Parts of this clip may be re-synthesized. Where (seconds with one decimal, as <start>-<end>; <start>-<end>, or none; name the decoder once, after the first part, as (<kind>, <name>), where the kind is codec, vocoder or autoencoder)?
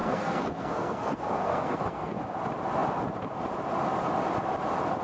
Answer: 0.0-2.2 (codec, SNAC)